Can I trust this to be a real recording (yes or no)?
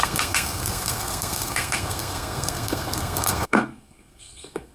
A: no